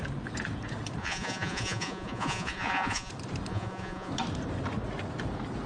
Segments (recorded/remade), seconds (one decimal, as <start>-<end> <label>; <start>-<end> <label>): 0.0-1.0 recorded; 1.0-3.1 remade; 3.1-3.5 recorded; 3.5-4.1 remade; 4.1-5.7 recorded